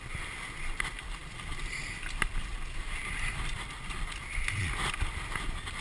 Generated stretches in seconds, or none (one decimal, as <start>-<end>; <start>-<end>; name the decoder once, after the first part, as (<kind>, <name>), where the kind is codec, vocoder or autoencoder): 1.2-1.8 (vocoder, BigVGAN v2); 3.3-4.6